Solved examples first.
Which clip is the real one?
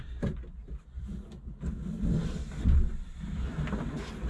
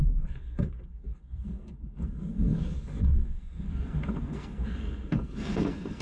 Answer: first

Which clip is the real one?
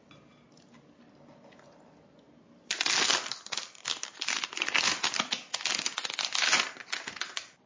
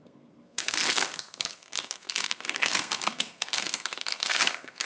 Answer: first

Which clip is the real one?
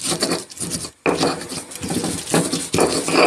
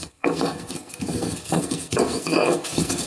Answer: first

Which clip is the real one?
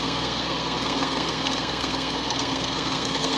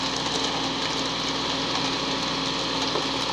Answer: second